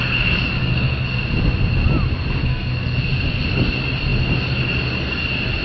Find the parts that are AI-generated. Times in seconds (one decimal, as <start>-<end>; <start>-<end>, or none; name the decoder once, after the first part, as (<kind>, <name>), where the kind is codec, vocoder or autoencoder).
0.6-1.2 (codec, SNAC); 2.4-3.0